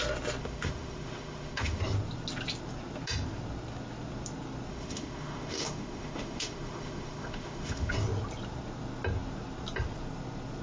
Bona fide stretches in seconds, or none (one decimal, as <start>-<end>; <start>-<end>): 0.0-0.4; 1.8-4.7; 7.9-10.6